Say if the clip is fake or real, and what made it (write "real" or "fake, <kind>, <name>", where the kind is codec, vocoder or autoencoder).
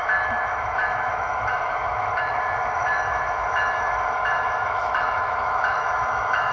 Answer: fake, autoencoder, DAC-VAE